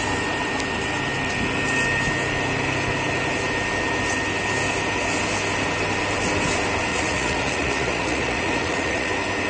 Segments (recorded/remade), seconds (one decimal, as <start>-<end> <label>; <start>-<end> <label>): 0.0-6.9 recorded; 6.9-9.1 remade; 9.1-9.5 recorded